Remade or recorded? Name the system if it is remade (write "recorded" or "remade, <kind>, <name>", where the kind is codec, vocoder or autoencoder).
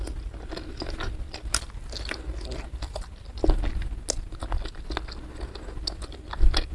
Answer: recorded